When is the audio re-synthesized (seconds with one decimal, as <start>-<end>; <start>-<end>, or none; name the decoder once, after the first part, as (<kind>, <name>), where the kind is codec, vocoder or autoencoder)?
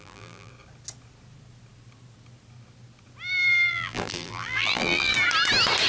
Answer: 0.0-0.5 (vocoder, BigVGAN v2); 3.7-5.1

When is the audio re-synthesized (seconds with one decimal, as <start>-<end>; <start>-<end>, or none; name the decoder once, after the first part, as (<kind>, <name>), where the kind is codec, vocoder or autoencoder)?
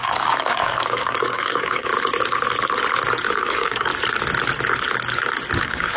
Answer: 0.0-1.9 (codec, DAC); 3.3-3.9; 5.6-6.0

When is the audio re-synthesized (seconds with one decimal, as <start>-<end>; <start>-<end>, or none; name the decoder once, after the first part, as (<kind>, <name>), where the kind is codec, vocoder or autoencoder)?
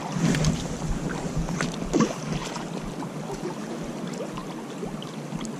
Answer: 2.4-2.9 (vocoder, BigVGAN v2)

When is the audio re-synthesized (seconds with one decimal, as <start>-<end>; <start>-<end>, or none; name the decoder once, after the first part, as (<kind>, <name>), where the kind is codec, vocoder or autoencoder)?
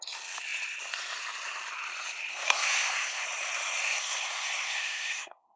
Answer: 2.3-3.2 (codec, SNAC); 3.8-5.6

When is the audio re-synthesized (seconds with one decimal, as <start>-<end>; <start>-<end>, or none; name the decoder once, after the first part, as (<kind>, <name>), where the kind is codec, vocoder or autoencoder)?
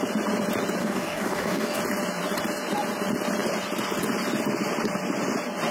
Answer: 0.8-1.8 (codec, DAC)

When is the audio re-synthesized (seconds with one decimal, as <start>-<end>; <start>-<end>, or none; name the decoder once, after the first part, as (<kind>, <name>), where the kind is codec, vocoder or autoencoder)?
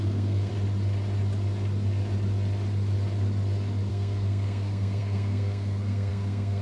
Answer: 0.0-0.5 (codec, SNAC); 3.9-6.6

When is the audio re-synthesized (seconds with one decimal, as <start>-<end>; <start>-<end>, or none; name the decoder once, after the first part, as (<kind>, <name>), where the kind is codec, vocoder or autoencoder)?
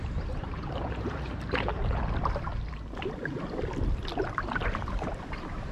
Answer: 0.0-1.8 (vocoder, BigVGAN v2); 4.6-5.7